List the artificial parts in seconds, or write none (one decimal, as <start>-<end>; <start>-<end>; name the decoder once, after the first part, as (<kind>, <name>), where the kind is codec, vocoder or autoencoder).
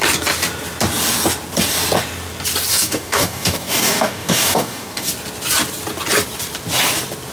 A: 2.7-5.1 (codec, DAC)